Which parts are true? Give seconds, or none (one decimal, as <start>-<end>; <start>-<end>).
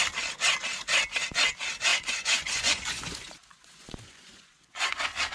0.0-1.9